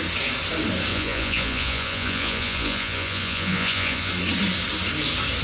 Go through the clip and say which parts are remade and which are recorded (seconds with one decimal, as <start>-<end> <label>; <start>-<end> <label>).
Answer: 0.0-0.9 recorded; 0.9-4.1 remade; 4.1-5.4 recorded

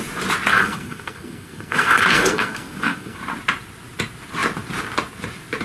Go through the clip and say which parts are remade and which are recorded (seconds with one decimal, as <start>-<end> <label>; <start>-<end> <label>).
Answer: 0.0-0.5 recorded; 0.5-3.2 remade; 3.2-5.6 recorded

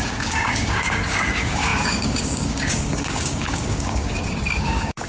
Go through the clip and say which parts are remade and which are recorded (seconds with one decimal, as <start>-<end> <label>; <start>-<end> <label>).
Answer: 0.0-5.1 remade

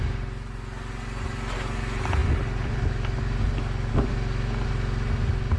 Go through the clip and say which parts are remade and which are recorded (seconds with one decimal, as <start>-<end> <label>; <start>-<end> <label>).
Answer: 0.0-5.6 recorded

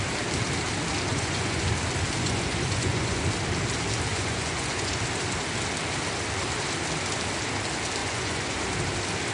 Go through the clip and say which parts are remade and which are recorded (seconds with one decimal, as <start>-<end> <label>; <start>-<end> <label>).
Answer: 0.0-1.1 recorded; 1.1-1.7 remade; 1.7-2.2 recorded; 2.2-3.2 remade; 3.2-4.1 recorded; 4.1-4.9 remade; 4.9-8.0 recorded; 8.0-8.6 remade; 8.6-9.3 recorded

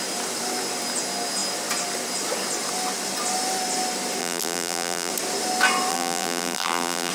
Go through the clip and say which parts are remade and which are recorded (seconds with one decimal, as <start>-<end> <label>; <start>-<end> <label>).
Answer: 0.0-4.2 recorded; 4.2-5.1 remade; 5.1-5.9 recorded; 5.9-7.1 remade

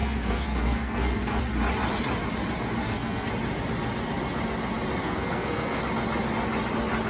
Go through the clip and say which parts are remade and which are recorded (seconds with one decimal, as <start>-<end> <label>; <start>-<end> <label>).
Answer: 0.0-1.4 remade; 1.4-2.8 recorded; 2.8-3.3 remade; 3.3-5.0 recorded; 5.0-5.8 remade; 5.8-7.1 recorded

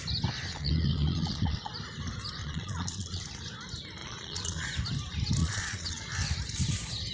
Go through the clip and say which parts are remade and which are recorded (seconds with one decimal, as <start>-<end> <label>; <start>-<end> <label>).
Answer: 0.0-0.5 recorded; 0.5-1.7 remade; 1.7-2.4 recorded; 2.4-3.2 remade; 3.2-4.0 recorded; 4.0-4.7 remade; 4.7-5.4 recorded; 5.4-6.0 remade; 6.0-7.1 recorded